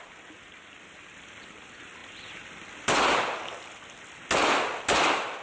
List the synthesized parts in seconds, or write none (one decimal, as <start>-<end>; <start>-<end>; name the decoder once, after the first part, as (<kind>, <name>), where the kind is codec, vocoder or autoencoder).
none